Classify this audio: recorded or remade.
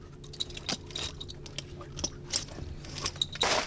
recorded